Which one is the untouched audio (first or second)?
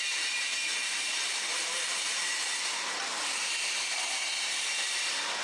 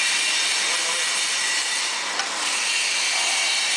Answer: second